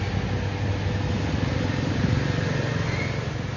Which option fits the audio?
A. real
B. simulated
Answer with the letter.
A